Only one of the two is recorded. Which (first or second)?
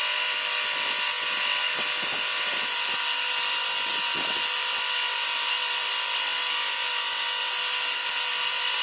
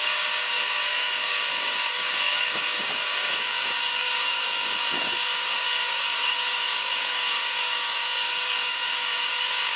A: first